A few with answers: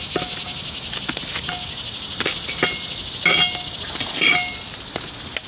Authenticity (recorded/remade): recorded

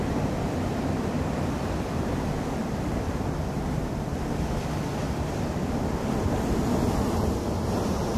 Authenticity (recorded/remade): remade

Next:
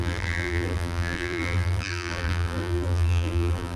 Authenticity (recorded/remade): remade